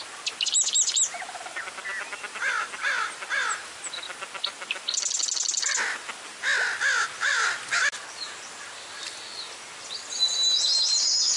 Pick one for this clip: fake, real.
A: real